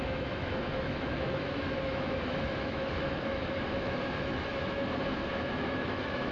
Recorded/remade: remade